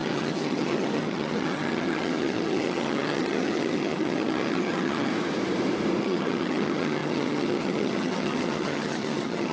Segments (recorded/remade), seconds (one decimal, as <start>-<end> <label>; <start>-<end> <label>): 0.0-5.1 remade; 5.1-6.0 recorded; 6.0-9.5 remade

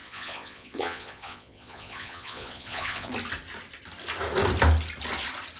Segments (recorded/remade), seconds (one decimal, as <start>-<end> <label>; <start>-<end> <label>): 0.0-3.1 remade; 3.1-5.6 recorded

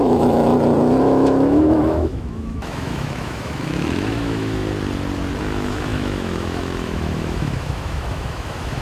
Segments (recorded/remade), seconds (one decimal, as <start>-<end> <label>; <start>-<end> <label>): 0.0-0.5 remade; 0.5-1.0 recorded; 1.0-4.6 remade; 4.6-5.4 recorded; 5.4-8.8 remade

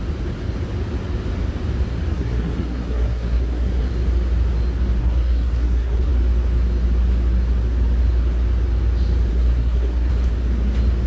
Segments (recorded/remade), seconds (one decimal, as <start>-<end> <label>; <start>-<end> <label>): 0.0-2.1 recorded; 2.1-3.9 remade; 3.9-5.0 recorded; 5.0-6.1 remade; 6.1-9.3 recorded; 9.3-10.1 remade; 10.1-11.1 recorded

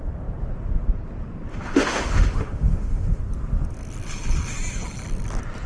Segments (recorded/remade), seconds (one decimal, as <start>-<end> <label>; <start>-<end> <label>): 0.0-1.5 recorded; 1.5-3.2 remade; 3.2-5.7 recorded

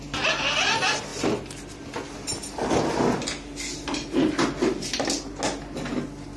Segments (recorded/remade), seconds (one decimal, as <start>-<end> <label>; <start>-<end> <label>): 0.0-6.4 recorded

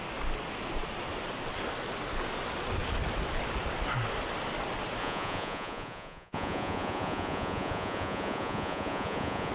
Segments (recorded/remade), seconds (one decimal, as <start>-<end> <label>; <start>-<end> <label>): 0.0-5.0 recorded; 5.0-9.5 remade